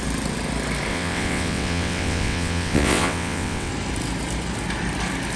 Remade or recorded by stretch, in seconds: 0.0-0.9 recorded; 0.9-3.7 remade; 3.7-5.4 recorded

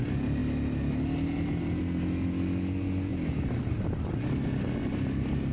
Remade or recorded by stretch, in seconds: 0.0-5.5 recorded